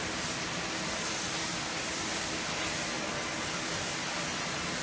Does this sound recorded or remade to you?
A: recorded